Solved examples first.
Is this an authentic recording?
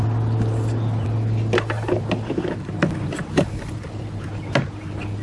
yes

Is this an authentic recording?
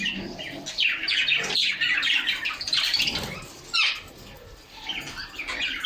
yes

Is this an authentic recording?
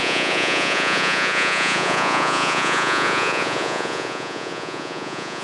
no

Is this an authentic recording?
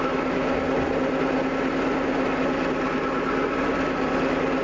yes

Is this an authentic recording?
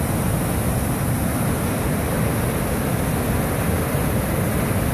yes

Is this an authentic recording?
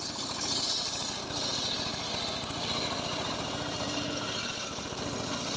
yes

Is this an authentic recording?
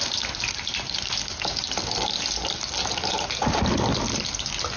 yes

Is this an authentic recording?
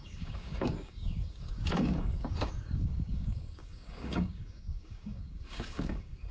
no